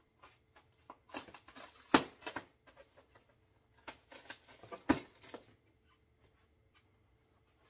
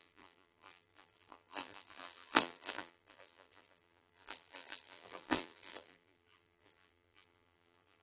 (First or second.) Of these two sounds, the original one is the first